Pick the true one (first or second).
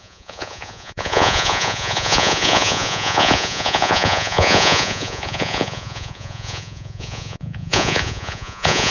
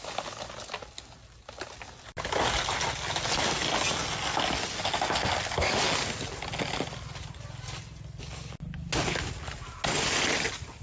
second